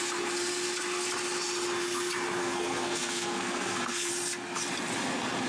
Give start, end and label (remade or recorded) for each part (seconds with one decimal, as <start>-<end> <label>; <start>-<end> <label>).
0.0-2.4 recorded; 2.4-4.1 remade; 4.1-5.5 recorded